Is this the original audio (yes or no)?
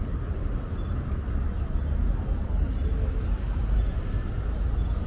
yes